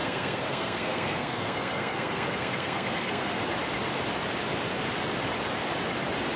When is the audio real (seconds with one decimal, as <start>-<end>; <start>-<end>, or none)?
3.4-6.4